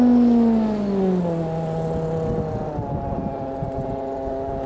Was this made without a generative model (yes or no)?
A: yes